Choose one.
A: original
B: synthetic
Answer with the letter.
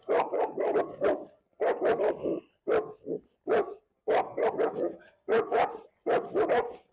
B